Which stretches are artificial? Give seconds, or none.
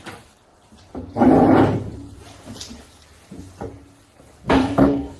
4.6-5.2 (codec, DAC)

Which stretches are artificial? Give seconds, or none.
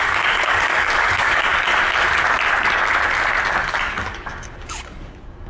0.0-1.7 (codec, DAC); 3.6-5.5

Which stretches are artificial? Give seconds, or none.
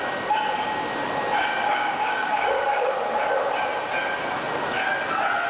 1.5-2.9 (codec, DAC)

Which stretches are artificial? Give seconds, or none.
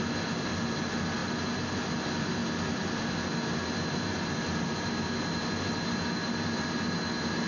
none